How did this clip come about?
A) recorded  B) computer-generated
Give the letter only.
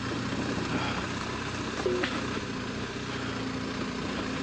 A